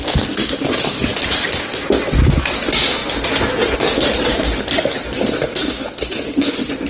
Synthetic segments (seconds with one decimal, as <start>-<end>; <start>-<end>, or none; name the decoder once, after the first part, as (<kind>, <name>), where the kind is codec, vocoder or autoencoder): none

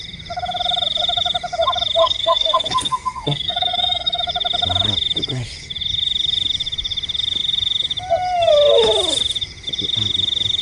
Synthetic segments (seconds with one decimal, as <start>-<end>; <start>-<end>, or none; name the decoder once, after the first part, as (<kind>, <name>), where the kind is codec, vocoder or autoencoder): 2.0-4.2 (codec, SNAC)

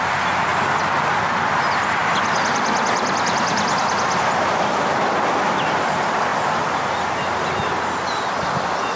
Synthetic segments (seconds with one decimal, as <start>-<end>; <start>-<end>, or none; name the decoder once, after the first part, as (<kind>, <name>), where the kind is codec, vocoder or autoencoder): none

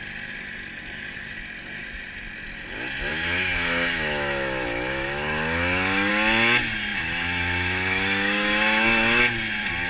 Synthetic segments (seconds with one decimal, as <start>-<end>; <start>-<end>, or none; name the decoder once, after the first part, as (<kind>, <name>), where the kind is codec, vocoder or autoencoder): 3.1-6.1 (autoencoder, DAC-VAE); 6.9-9.2

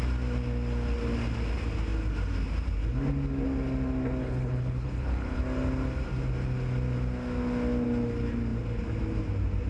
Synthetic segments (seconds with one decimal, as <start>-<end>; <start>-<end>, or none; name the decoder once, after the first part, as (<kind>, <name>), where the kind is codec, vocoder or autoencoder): 4.2-5.4 (codec, HILCodec)